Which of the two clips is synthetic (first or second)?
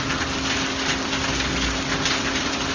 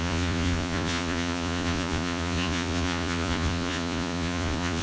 second